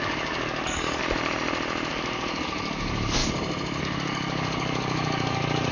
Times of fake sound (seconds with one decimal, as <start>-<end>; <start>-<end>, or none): 0.0-1.0; 1.9-3.2; 3.8-5.7